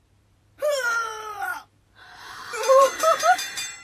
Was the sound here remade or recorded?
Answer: remade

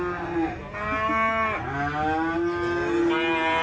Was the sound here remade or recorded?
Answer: recorded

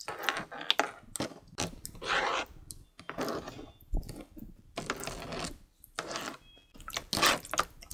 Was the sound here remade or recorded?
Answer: recorded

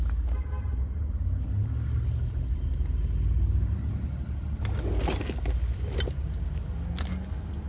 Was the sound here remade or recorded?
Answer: recorded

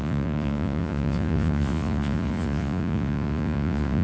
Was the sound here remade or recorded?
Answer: remade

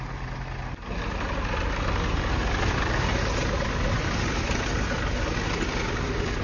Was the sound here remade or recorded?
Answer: recorded